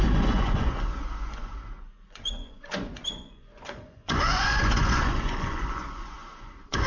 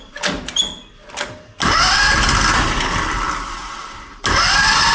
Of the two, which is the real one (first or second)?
second